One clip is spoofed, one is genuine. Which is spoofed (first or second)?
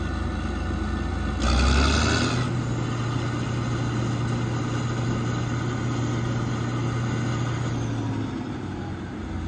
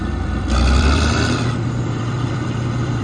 second